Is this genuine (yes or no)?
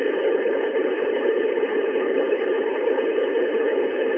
no